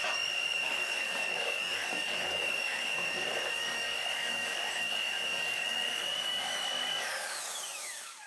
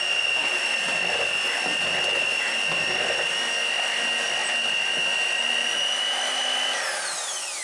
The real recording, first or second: second